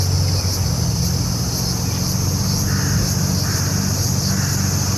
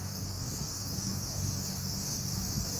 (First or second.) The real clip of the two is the first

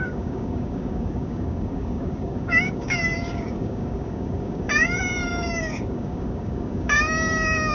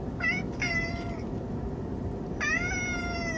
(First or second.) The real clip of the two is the second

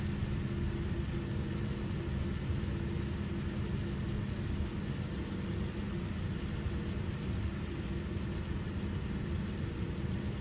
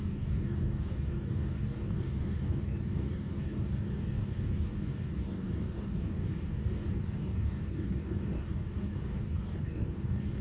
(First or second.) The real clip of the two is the first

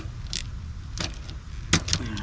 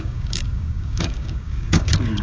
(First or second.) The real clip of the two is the first